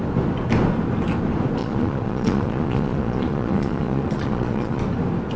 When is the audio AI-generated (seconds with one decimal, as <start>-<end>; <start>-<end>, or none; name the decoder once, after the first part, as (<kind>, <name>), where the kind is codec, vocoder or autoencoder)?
1.6-4.8 (vocoder, Vocos)